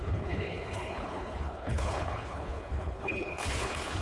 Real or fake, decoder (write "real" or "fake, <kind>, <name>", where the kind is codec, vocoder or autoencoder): fake, codec, HILCodec